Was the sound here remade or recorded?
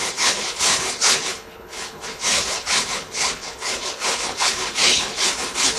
remade